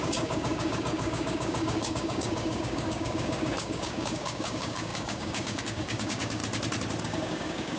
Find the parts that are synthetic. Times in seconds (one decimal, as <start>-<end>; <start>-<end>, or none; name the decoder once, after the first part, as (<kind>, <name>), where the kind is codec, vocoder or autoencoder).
0.0-6.4 (codec, DAC); 7.0-7.8